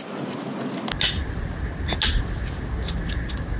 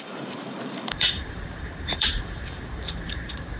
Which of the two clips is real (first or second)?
first